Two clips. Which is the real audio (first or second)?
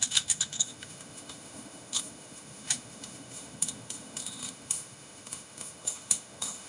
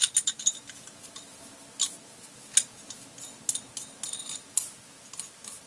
second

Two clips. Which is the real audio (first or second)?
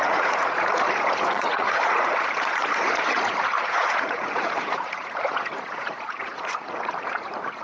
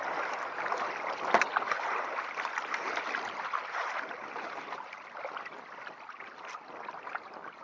second